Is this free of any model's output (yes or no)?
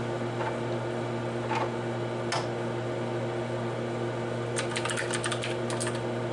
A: yes